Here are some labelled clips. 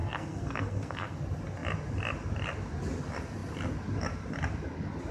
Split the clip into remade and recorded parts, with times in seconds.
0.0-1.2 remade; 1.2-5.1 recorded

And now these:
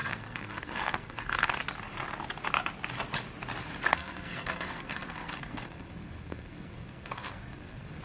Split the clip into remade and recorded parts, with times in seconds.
0.0-1.6 remade; 1.6-3.9 recorded; 3.9-8.0 remade

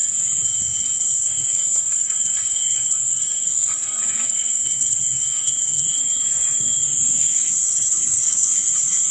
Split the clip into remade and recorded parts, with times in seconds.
0.0-9.1 remade

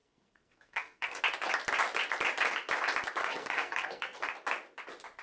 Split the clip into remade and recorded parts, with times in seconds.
0.0-1.2 remade; 1.2-3.2 recorded; 3.2-4.3 remade; 4.3-5.2 recorded